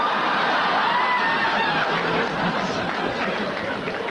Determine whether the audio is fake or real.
real